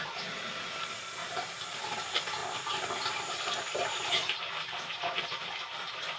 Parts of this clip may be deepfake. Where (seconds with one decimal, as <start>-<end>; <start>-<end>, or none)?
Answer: 1.2-1.8; 2.4-5.4

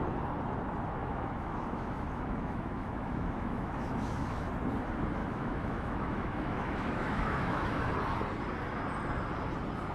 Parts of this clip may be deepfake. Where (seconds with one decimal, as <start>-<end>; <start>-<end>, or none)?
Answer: 1.0-4.5; 5.2-7.9

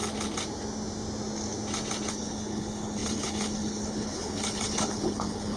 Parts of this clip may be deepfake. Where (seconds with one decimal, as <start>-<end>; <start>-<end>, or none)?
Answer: 2.1-5.6

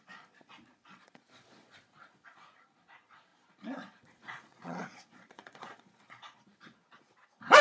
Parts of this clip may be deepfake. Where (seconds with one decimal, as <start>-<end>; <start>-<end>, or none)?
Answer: 0.0-7.6